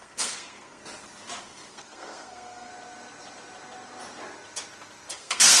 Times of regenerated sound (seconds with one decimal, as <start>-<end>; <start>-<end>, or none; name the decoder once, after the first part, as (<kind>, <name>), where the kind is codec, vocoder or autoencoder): 0.0-0.8 (codec, SNAC); 1.4-2.7; 5.1-5.6